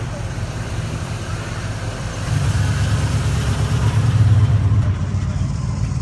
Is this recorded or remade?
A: remade